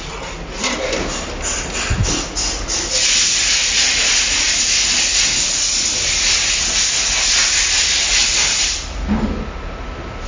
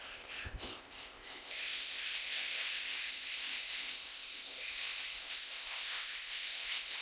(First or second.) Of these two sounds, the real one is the first